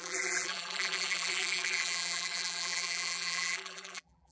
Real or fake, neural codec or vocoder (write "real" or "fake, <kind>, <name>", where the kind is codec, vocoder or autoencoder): fake, vocoder, BigVGAN v2